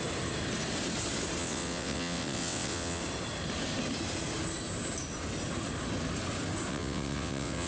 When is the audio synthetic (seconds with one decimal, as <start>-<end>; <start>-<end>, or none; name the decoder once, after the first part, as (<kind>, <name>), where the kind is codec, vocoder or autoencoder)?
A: 1.4-3.0 (vocoder, WaveNeXt); 6.7-7.7